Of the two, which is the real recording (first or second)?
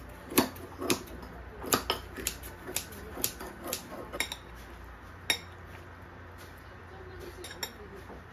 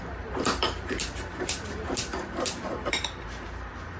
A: first